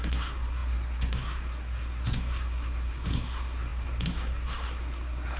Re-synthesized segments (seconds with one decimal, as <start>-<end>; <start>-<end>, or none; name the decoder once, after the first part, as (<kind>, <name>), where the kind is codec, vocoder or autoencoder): 0.0-5.4 (codec, SNAC)